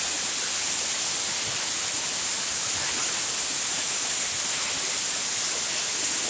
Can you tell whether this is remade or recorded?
recorded